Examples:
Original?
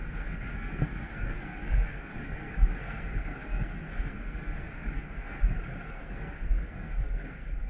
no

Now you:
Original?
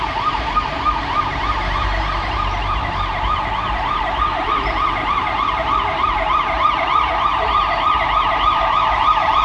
no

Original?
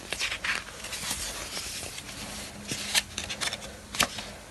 yes